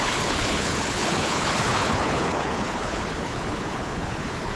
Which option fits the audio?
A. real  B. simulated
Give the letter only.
B